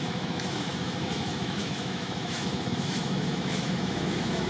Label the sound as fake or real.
fake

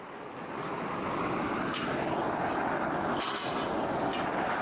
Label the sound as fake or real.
real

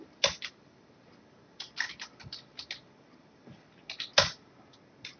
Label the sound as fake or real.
real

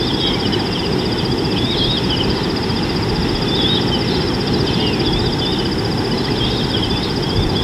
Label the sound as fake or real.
real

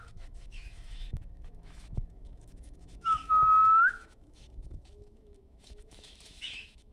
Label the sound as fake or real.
fake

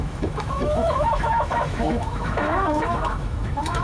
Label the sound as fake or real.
fake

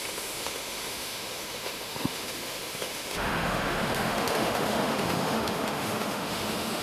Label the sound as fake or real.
fake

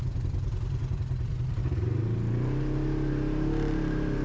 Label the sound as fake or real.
real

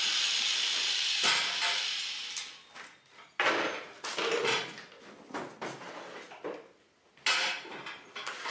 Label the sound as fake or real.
real